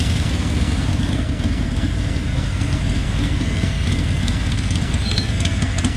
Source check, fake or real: fake